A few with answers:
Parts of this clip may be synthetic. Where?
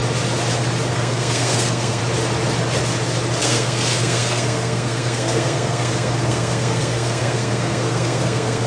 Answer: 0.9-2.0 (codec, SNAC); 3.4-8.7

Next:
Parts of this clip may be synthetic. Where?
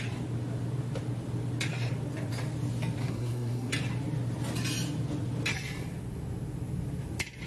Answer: 3.0-3.7 (codec, SNAC)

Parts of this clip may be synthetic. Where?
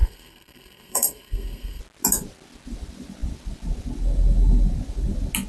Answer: 0.0-1.8 (codec, SNAC)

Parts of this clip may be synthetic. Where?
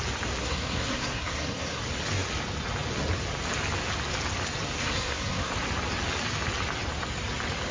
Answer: 0.4-1.8 (codec, SNAC); 4.8-5.5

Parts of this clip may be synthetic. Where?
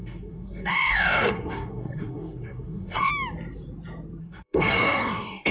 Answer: 0.0-3.1 (codec, SNAC); 4.2-5.5